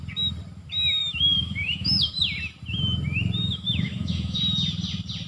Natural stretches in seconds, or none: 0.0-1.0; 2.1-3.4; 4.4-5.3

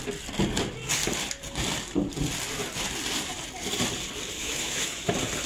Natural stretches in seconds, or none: 0.0-4.4; 5.1-5.5

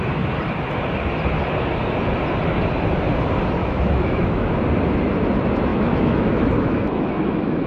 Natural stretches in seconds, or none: 0.0-3.6; 4.5-5.7